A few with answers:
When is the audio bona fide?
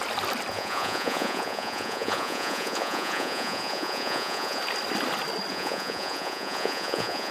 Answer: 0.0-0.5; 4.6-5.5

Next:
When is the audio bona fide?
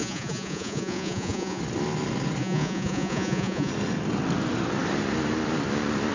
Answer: 1.6-2.4; 3.7-6.1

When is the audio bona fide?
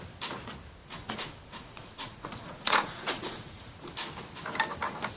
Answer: 0.0-0.8; 3.9-5.2